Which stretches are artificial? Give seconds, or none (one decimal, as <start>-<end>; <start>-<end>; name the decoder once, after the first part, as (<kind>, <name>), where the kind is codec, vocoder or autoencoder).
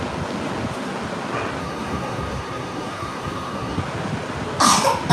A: 1.6-3.8 (codec, SNAC)